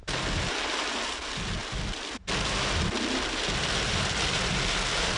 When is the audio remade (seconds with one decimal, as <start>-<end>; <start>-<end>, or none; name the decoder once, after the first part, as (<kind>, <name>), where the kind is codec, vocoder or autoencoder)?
none